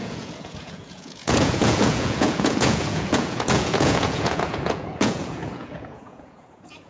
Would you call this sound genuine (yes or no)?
no